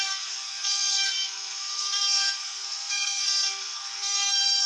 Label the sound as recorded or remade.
remade